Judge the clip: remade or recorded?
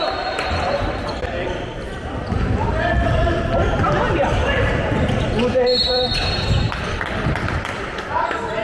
remade